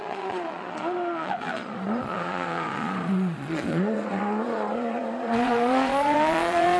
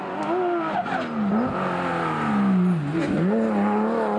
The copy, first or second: first